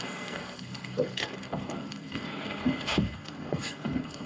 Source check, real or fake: fake